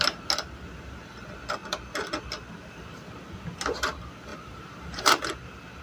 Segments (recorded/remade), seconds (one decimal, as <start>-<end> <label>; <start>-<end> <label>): 0.0-4.3 recorded; 4.3-5.2 remade; 5.2-5.8 recorded